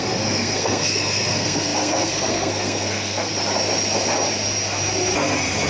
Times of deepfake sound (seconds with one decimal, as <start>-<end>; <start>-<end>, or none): 0.0-3.3